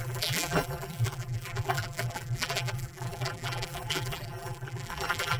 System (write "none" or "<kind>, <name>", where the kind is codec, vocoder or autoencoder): vocoder, BigVGAN v2